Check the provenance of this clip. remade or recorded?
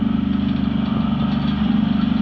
recorded